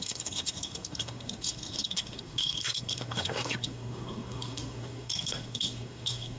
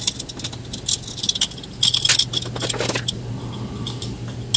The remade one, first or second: first